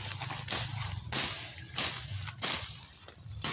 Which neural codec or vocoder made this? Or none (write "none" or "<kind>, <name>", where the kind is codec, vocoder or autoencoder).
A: none